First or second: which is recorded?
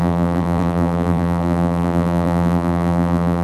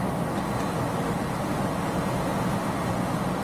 second